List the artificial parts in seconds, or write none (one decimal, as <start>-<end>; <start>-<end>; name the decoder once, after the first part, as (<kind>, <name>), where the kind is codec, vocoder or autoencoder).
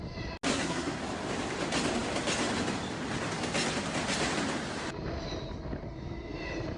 0.5-1.0 (codec, SNAC)